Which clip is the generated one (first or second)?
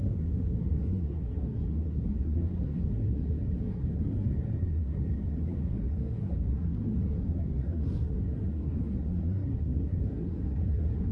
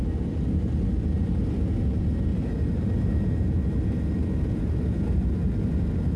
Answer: first